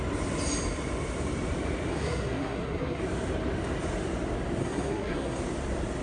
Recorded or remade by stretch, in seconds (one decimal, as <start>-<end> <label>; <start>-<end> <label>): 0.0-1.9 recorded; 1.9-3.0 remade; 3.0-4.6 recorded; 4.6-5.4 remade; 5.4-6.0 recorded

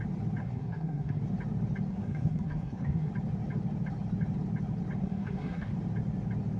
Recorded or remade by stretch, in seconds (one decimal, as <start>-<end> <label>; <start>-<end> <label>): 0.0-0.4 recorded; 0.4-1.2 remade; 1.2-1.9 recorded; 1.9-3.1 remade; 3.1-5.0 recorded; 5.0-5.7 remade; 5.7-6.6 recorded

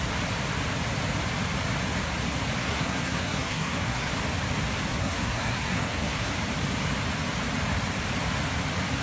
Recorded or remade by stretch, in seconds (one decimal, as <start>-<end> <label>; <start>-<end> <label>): 0.0-2.6 recorded; 2.6-4.1 remade; 4.1-4.9 recorded; 4.9-6.3 remade; 6.3-9.0 recorded

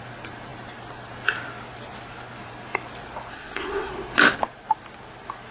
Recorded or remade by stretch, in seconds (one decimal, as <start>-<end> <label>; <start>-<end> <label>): 0.0-3.3 recorded; 3.3-3.9 remade; 3.9-5.5 recorded

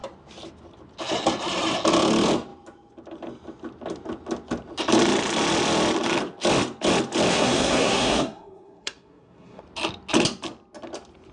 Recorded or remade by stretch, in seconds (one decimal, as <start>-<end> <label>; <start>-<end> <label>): 0.0-7.3 recorded; 7.3-9.6 remade; 9.6-11.3 recorded

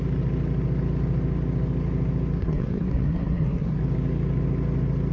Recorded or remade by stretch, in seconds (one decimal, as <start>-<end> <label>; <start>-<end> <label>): 0.0-2.4 recorded; 2.4-3.8 remade; 3.8-5.1 recorded

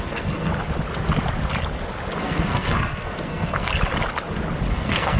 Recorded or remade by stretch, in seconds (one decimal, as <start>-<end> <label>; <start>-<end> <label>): 0.0-0.5 remade; 0.5-2.2 recorded; 2.2-3.7 remade; 3.7-4.7 recorded; 4.7-5.2 remade